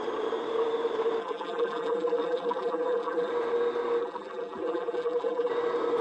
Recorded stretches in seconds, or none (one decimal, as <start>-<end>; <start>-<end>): 0.0-1.2; 3.3-4.0; 5.5-6.0